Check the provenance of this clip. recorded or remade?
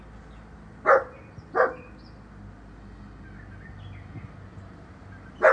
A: recorded